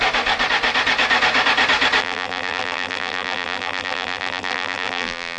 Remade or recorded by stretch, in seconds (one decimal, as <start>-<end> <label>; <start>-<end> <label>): 0.0-2.0 recorded; 2.0-5.4 remade